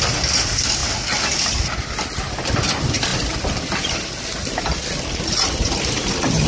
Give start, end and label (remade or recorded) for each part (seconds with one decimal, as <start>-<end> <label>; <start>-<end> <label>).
0.0-6.5 recorded